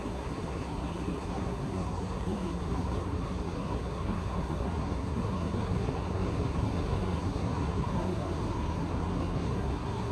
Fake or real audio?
fake